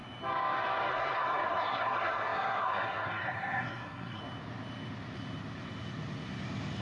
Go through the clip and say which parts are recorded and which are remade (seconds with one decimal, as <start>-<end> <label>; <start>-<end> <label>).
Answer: 0.0-0.9 recorded; 0.9-4.2 remade; 4.2-6.8 recorded